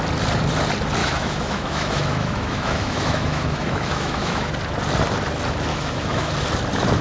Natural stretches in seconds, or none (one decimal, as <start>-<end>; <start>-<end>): 0.0-1.0; 4.5-5.7; 6.3-7.0